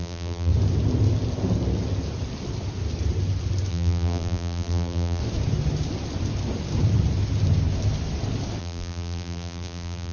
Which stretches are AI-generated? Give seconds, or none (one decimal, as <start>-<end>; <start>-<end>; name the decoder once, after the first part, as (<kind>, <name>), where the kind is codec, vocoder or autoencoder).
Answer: 0.0-0.5 (vocoder, BigVGAN v2); 3.7-5.2; 8.6-10.1